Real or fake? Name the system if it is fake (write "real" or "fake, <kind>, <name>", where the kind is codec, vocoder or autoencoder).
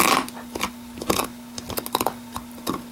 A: real